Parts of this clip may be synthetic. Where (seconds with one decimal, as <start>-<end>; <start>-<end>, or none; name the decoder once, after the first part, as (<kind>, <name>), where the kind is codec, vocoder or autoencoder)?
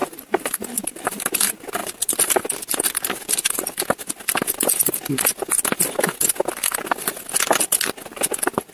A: 0.0-1.2 (vocoder, BigVGAN v2); 1.8-2.4